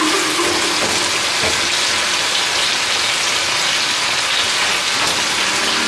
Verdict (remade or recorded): recorded